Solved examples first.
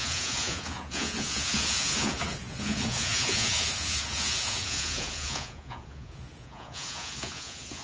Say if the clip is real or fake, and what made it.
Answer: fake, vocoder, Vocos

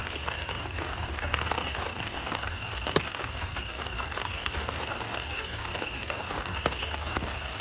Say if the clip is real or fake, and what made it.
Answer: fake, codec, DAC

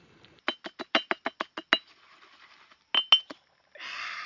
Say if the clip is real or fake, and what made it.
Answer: real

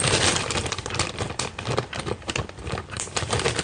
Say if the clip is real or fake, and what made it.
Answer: fake, vocoder, BigVGAN v2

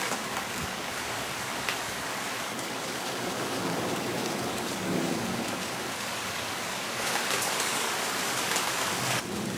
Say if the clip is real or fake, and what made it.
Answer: fake, codec, DAC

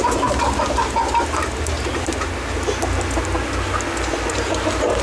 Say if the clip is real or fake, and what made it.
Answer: real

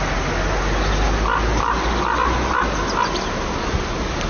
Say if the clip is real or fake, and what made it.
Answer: real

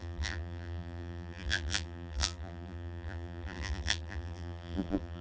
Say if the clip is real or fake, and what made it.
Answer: fake, vocoder, BigVGAN v2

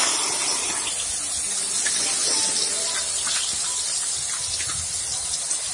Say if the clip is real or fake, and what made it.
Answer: real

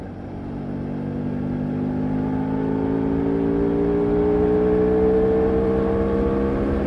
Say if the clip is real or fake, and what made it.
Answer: real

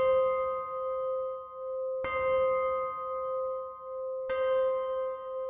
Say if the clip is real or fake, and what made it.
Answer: real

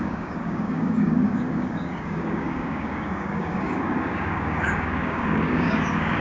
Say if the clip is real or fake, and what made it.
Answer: fake, codec, DAC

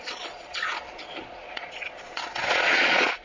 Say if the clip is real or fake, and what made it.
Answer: fake, vocoder, Vocos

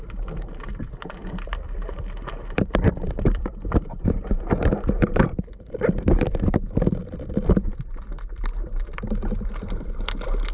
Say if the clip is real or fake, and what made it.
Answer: fake, vocoder, BigVGAN v2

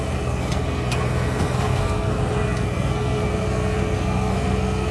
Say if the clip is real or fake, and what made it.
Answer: fake, codec, SNAC